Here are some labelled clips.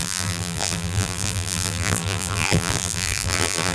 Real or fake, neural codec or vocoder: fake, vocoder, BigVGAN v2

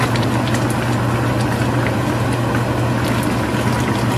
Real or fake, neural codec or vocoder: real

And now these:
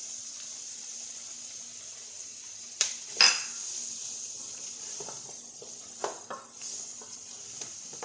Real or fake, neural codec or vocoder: fake, vocoder, BigVGAN v2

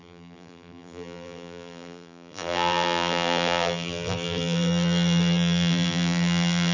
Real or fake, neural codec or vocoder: fake, vocoder, BigVGAN v2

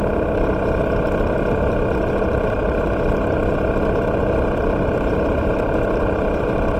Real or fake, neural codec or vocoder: real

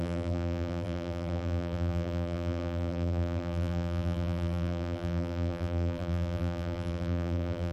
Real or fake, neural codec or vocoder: fake, vocoder, BigVGAN v2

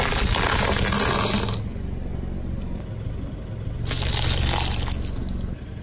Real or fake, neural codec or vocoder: real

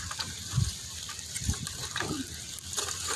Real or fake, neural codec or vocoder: real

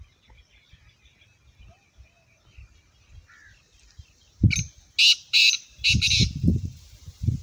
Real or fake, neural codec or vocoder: real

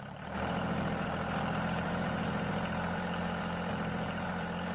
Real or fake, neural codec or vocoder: fake, vocoder, BigVGAN v2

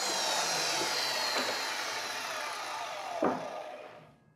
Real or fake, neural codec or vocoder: fake, vocoder, BigVGAN v2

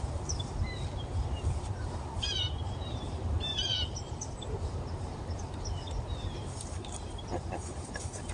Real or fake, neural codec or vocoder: fake, vocoder, BigVGAN v2